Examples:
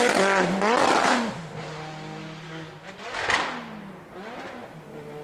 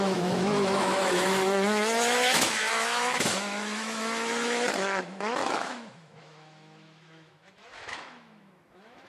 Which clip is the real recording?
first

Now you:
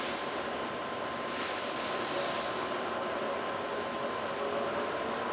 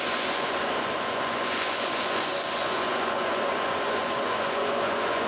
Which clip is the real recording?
first